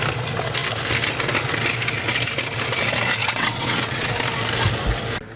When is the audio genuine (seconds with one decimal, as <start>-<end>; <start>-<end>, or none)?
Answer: 0.0-3.2; 4.1-5.4